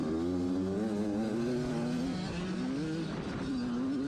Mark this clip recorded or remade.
recorded